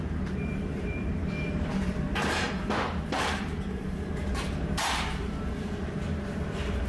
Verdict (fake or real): fake